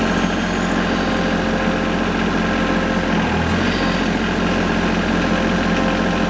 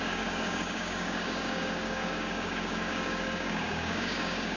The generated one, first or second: second